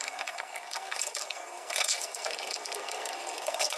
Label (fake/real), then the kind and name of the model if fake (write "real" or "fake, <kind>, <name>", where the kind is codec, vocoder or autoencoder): fake, codec, SNAC